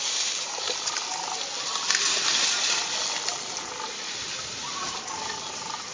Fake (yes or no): no